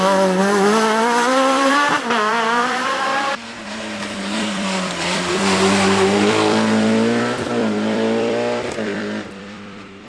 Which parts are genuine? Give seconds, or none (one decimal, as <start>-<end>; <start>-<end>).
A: none